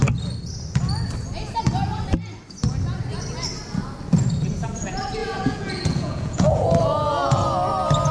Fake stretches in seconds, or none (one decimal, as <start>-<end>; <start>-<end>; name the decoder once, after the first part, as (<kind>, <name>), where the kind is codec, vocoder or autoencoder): 5.2-7.5 (vocoder, Vocos)